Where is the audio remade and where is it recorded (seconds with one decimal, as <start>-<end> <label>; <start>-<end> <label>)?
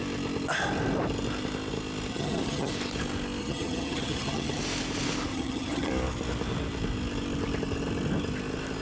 0.0-2.1 recorded; 2.1-2.7 remade; 2.7-3.4 recorded; 3.4-4.6 remade; 4.6-5.3 recorded; 5.3-5.9 remade; 5.9-8.8 recorded